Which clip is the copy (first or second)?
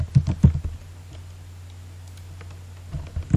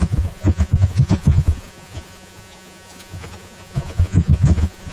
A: second